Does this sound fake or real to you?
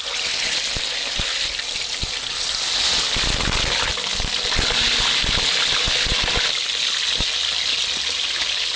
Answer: real